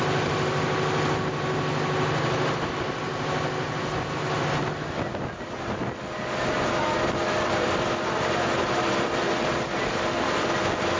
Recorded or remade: recorded